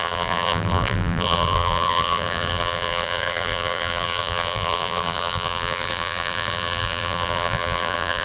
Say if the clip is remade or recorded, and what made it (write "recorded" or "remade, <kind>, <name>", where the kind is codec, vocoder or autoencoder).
remade, vocoder, BigVGAN v2